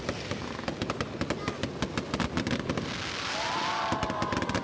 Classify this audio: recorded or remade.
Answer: recorded